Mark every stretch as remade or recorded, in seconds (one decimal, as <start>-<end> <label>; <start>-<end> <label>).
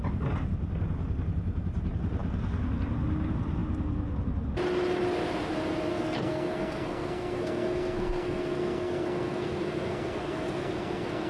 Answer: 0.0-5.9 recorded; 5.9-11.3 remade